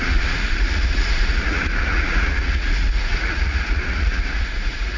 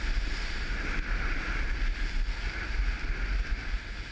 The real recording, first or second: second